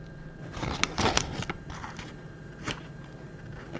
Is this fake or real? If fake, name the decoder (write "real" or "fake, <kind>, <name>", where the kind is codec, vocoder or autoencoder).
real